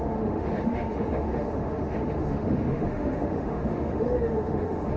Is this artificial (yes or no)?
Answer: yes